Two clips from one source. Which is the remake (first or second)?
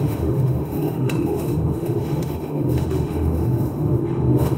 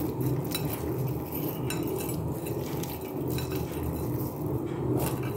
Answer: first